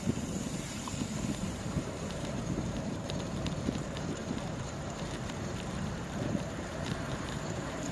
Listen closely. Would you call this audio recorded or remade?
remade